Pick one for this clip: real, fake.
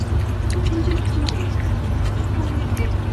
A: real